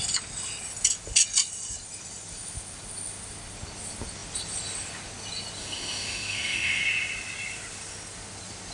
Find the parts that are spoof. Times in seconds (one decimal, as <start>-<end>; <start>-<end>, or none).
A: 5.6-6.8